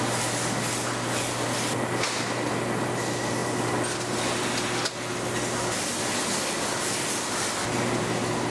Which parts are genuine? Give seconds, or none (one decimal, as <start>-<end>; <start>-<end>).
0.0-8.5

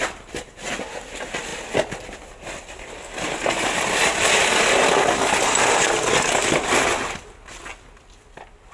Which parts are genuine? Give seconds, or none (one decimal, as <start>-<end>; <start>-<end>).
0.0-8.7

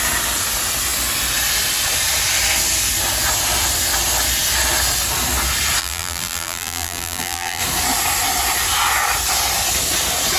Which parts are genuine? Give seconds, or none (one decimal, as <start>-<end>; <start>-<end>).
0.0-5.8; 7.6-10.4